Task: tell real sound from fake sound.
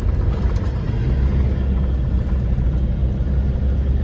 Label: real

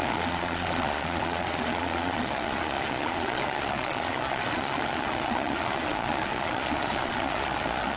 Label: fake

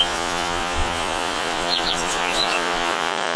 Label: fake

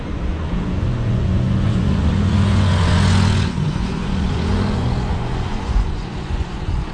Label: fake